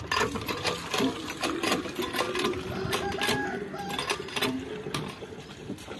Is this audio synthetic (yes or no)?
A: no